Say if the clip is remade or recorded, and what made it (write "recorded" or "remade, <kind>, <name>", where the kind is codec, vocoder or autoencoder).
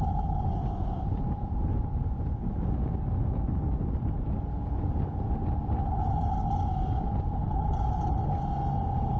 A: recorded